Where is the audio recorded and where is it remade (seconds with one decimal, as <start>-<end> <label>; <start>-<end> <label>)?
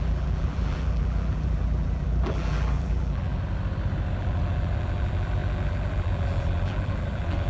0.0-3.4 remade; 3.4-4.2 recorded; 4.2-7.5 remade